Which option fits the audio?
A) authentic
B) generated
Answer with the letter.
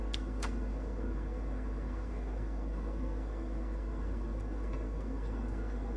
B